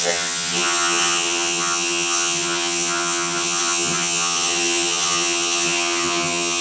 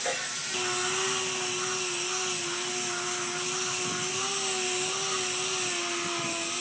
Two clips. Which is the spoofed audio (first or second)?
first